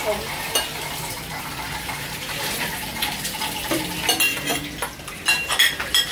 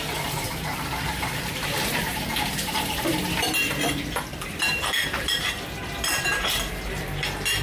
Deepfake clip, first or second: second